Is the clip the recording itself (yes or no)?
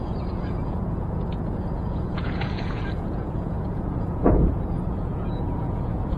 no